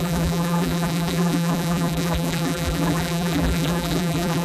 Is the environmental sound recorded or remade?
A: remade